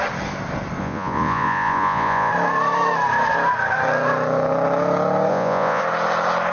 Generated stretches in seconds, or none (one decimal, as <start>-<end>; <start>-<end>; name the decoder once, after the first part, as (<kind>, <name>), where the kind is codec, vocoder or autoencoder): 0.8-2.3 (vocoder, Vocos); 5.3-5.8